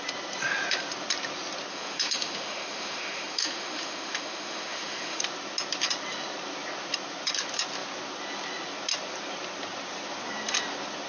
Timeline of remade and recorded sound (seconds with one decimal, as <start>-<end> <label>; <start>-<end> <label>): 0.0-1.7 recorded; 1.7-5.2 remade; 5.2-11.1 recorded